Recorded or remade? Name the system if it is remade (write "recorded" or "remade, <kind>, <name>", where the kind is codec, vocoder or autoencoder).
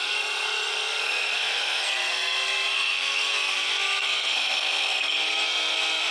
remade, codec, SNAC